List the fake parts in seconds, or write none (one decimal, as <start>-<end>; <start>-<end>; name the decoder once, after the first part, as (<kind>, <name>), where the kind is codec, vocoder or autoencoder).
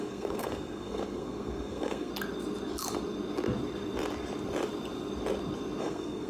0.0-2.1 (codec, SNAC); 5.8-6.3